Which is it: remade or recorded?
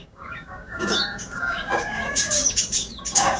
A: remade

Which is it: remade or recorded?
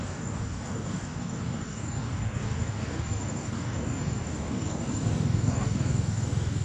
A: remade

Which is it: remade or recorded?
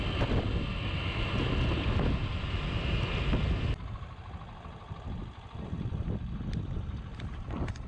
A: recorded